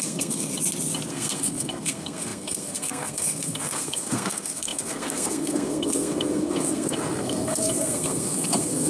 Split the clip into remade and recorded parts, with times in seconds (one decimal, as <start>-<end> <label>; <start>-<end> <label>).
0.0-0.5 remade; 0.5-1.1 recorded; 1.1-8.9 remade